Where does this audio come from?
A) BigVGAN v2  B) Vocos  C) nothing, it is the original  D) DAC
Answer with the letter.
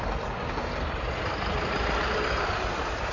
C